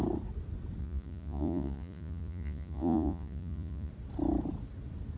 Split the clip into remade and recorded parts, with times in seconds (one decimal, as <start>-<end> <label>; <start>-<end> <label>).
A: 0.0-0.8 recorded; 0.8-3.9 remade; 3.9-5.2 recorded